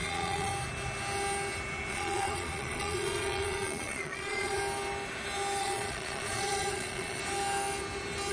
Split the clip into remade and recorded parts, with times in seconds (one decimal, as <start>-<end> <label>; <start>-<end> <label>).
0.0-0.5 remade; 0.5-1.9 recorded; 1.9-4.6 remade; 4.6-5.6 recorded; 5.6-7.2 remade; 7.2-8.3 recorded